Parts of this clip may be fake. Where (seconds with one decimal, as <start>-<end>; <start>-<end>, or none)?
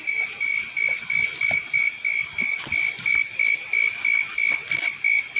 none